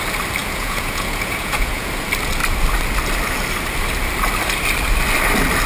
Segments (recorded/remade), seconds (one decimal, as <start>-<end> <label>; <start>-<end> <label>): 0.0-0.4 recorded; 0.4-1.9 remade; 1.9-5.7 recorded